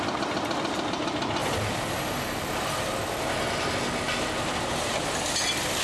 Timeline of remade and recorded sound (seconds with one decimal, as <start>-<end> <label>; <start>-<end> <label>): 0.0-5.8 recorded